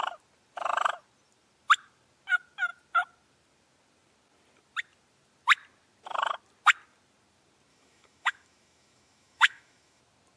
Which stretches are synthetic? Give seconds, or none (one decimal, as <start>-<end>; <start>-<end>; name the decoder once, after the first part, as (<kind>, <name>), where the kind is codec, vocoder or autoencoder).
7.7-10.0 (autoencoder, DAC-VAE)